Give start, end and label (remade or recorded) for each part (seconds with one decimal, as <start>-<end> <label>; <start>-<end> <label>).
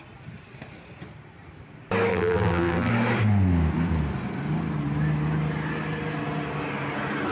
0.0-2.1 recorded; 2.1-2.9 remade; 2.9-7.3 recorded